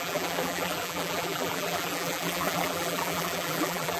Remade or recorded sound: remade